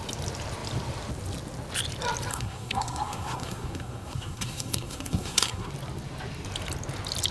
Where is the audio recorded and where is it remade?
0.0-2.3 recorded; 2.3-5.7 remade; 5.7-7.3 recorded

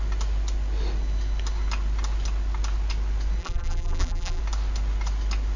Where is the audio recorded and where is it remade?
0.0-3.4 recorded; 3.4-4.4 remade; 4.4-5.6 recorded

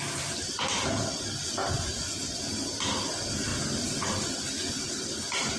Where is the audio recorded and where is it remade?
0.0-1.6 remade; 1.6-2.5 recorded; 2.5-3.5 remade; 3.5-4.7 recorded; 4.7-5.6 remade